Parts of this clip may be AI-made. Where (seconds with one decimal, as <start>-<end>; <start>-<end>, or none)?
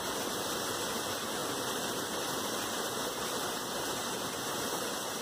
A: none